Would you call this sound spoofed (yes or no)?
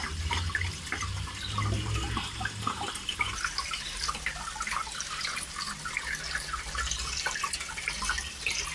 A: no